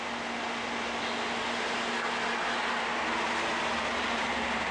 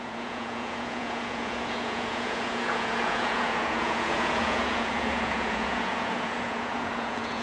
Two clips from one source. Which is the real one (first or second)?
first